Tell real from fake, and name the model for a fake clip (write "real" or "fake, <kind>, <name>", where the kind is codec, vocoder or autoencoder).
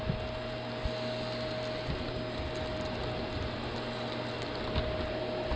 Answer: real